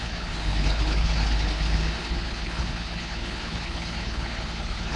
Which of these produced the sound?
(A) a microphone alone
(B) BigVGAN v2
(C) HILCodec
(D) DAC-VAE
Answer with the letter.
C